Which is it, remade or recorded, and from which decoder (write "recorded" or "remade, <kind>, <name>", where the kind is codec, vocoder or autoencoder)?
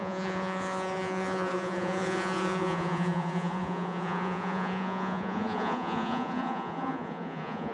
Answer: remade, vocoder, Vocos